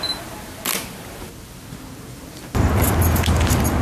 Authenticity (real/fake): real